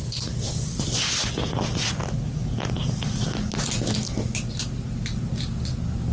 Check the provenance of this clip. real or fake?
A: real